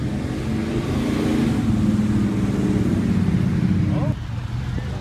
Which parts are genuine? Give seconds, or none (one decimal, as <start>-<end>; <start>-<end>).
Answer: 0.0-5.0